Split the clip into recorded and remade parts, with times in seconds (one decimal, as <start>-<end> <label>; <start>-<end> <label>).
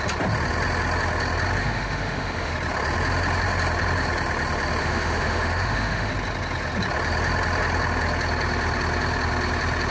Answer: 0.0-1.6 recorded; 1.6-2.5 remade; 2.5-4.8 recorded; 4.8-6.1 remade; 6.1-9.9 recorded